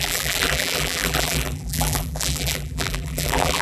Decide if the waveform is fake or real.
fake